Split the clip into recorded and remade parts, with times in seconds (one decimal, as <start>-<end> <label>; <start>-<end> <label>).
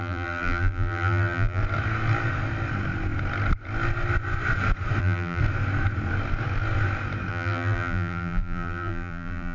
0.0-1.6 remade; 1.6-5.0 recorded; 5.0-5.4 remade; 5.4-7.3 recorded; 7.3-9.5 remade